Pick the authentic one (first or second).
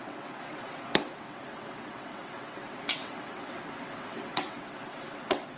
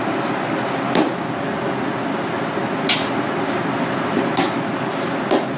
second